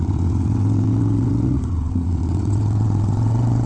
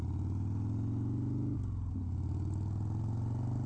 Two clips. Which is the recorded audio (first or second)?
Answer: second